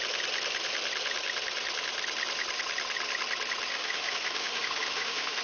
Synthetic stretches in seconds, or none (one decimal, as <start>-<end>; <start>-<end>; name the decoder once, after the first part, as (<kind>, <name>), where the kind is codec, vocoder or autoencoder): 3.7-5.4 (autoencoder, DAC-VAE)